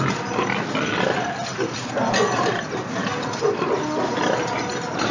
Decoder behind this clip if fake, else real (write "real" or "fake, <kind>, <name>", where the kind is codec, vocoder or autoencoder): real